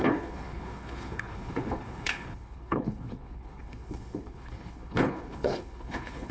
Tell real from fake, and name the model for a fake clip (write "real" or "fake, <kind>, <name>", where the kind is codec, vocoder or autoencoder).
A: fake, codec, HILCodec